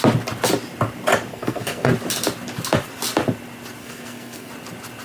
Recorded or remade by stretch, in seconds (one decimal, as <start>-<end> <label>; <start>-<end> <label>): 0.0-1.3 recorded; 1.3-1.9 remade; 1.9-3.8 recorded; 3.8-4.5 remade; 4.5-5.0 recorded